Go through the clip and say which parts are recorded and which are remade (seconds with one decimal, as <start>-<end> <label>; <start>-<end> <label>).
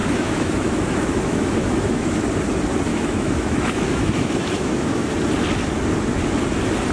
0.0-2.2 remade; 2.2-2.9 recorded; 2.9-5.1 remade; 5.1-6.9 recorded